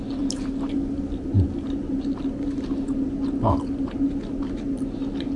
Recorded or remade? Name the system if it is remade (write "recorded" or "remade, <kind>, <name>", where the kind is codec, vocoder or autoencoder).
recorded